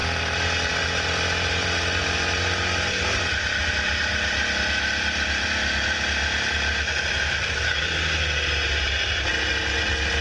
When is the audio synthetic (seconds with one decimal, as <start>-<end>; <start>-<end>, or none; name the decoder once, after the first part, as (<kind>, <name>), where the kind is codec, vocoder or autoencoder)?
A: 0.0-4.6 (vocoder, BigVGAN v2)